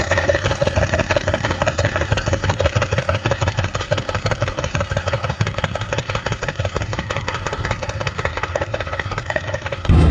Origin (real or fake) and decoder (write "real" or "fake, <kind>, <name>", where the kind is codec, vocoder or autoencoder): fake, codec, SNAC